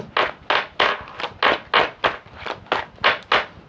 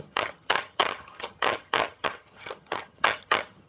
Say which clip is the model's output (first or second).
second